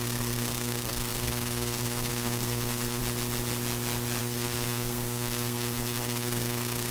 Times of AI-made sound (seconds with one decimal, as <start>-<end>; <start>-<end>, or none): 0.0-3.0; 4.2-6.9